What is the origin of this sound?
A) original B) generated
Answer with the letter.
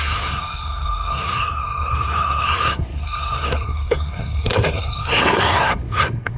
B